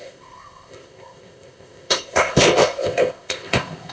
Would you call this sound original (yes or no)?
no